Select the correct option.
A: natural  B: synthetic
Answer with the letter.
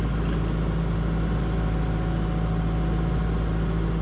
A